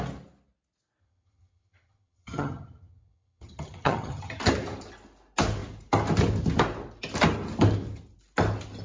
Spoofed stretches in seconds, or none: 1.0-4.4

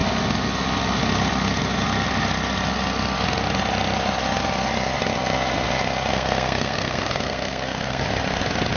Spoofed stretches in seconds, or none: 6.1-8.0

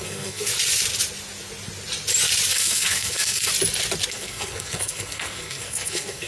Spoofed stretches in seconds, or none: 0.0-0.5; 2.5-3.5; 4.1-6.3

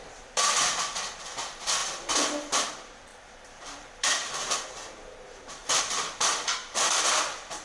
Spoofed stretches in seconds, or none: 0.0-1.8; 2.7-7.6

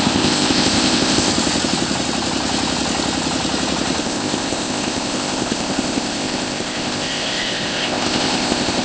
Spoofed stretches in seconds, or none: 0.0-1.3; 4.0-8.8